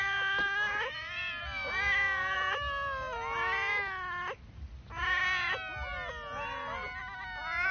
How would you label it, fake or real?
real